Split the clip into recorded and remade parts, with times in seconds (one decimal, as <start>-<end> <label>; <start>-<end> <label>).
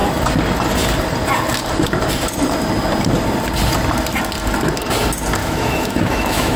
0.0-5.4 recorded; 5.4-6.6 remade